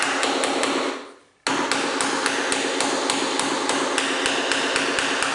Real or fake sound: real